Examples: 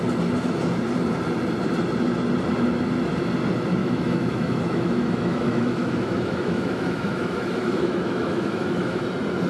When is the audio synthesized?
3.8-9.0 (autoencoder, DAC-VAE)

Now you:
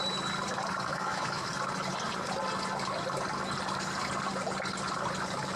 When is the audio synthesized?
0.9-1.5 (autoencoder, DAC-VAE)

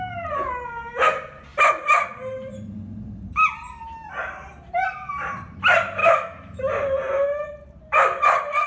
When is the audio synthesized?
6.0-6.6 (autoencoder, DAC-VAE)

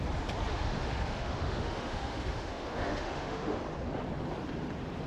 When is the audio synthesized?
0.5-3.6 (autoencoder, DAC-VAE)